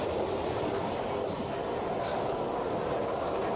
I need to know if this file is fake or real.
real